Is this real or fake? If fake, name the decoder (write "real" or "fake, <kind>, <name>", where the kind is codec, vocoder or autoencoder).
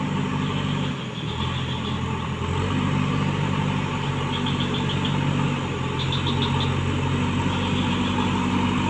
real